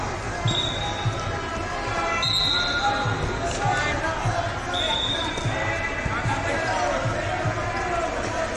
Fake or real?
real